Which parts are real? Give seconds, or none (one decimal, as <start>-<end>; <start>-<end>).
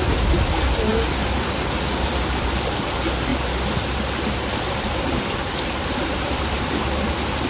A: 0.0-7.5